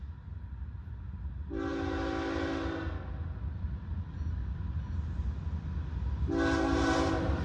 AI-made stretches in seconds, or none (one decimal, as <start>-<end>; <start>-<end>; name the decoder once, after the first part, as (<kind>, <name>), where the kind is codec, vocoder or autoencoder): none